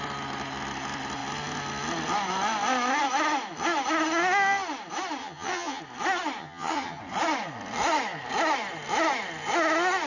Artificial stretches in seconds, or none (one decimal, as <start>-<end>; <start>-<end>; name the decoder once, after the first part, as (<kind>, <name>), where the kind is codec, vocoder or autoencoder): 5.2-5.8 (vocoder, HiFi-GAN); 6.4-7.0